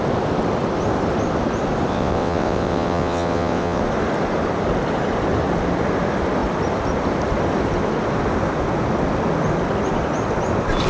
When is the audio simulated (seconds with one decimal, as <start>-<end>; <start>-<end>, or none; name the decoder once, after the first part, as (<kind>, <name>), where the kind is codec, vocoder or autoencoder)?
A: 1.9-3.8 (vocoder, WaveNeXt)